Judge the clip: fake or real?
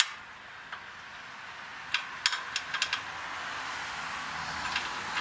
real